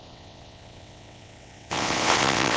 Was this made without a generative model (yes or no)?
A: no